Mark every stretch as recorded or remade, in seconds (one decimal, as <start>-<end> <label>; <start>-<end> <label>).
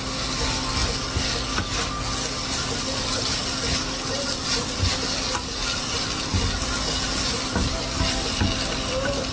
0.0-9.3 recorded